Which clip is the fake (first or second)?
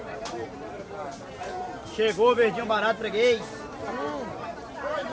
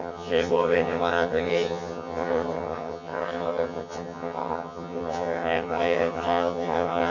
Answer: second